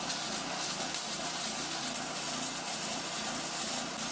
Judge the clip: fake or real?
real